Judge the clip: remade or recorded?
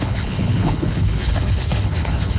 remade